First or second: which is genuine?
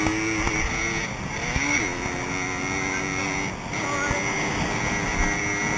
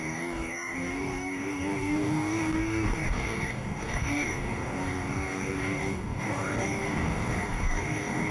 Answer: first